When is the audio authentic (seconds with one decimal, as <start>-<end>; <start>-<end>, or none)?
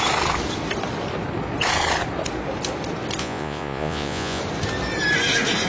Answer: 0.0-3.2; 4.4-5.7